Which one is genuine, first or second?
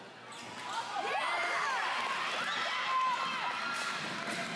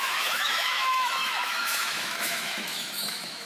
first